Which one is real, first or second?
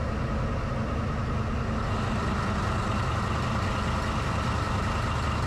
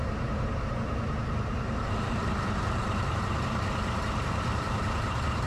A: first